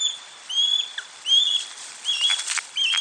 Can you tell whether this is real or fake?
real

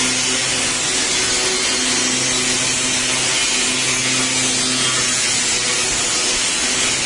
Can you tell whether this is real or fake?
real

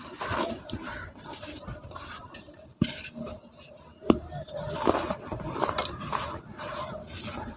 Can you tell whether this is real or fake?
fake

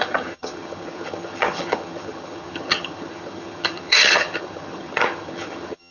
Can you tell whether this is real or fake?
fake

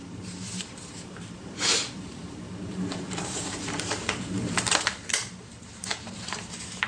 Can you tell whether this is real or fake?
fake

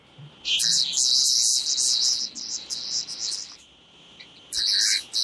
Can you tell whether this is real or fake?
real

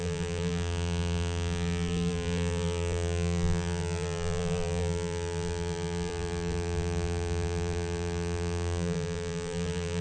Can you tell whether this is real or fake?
fake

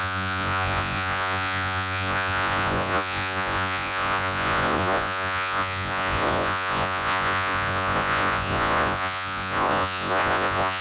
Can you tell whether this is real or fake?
fake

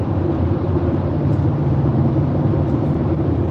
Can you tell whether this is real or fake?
fake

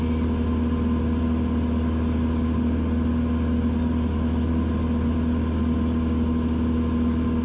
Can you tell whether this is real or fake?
real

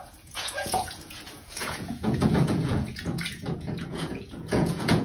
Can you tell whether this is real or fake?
fake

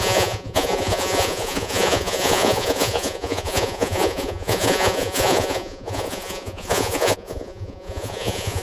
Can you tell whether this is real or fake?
fake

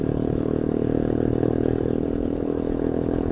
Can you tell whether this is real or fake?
fake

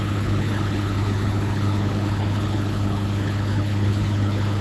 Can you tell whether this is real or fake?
fake